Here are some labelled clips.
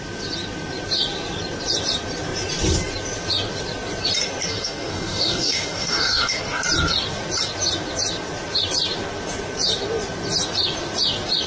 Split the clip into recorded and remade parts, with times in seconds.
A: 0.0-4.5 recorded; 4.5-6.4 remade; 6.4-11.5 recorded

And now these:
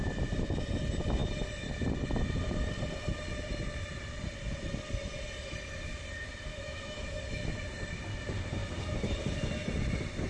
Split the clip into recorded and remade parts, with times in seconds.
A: 0.0-6.5 recorded; 6.5-7.2 remade; 7.2-10.3 recorded

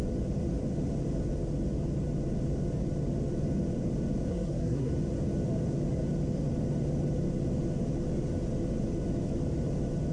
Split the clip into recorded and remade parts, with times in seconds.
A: 0.0-4.3 recorded; 4.3-4.9 remade; 4.9-10.1 recorded